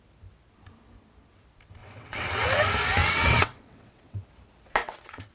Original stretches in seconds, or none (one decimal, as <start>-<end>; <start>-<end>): 0.0-1.8; 2.6-3.0; 4.2-4.8